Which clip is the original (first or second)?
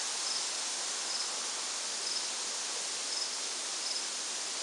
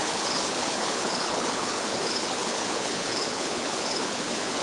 first